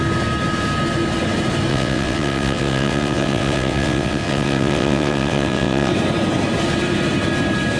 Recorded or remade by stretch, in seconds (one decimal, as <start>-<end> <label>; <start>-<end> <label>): 0.0-1.7 recorded; 1.7-5.9 remade; 5.9-7.8 recorded